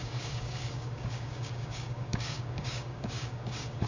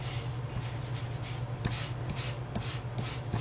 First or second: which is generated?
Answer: first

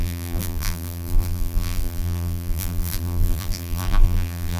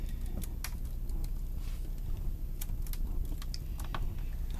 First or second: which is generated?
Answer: first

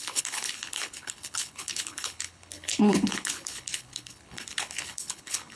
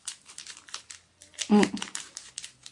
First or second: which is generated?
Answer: first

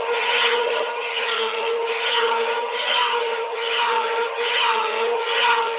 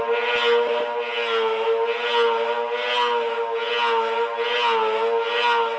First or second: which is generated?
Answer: first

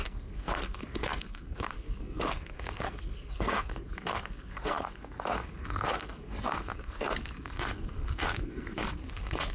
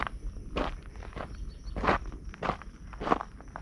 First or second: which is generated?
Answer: first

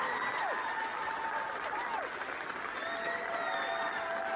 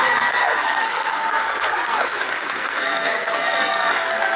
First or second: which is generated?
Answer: second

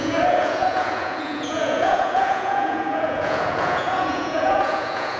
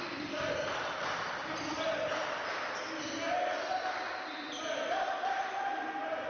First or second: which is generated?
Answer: first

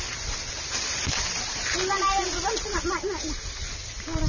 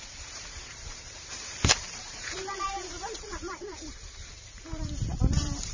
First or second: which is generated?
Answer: second